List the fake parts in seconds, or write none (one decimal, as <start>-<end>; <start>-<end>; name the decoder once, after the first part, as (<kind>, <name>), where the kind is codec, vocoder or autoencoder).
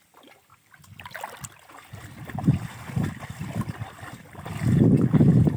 none